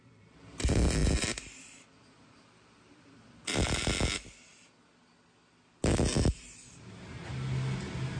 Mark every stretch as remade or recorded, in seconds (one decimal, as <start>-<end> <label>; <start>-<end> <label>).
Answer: 0.0-4.5 remade; 4.5-8.2 recorded